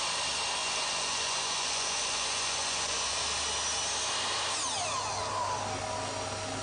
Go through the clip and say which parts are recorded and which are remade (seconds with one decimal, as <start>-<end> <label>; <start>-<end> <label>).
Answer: 0.0-0.6 recorded; 0.6-3.2 remade; 3.2-6.6 recorded